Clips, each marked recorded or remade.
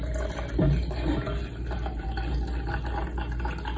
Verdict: recorded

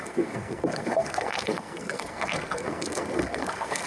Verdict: remade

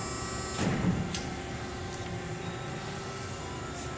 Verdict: recorded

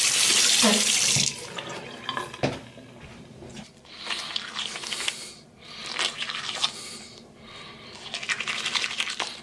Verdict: recorded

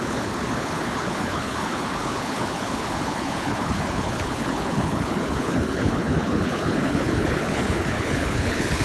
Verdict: remade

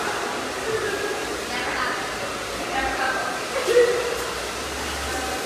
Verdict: recorded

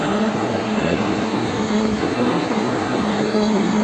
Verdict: remade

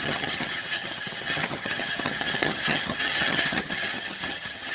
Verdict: remade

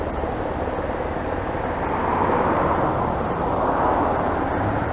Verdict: recorded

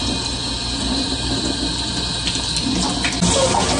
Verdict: recorded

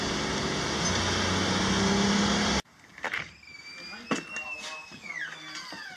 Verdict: recorded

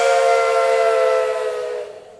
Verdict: recorded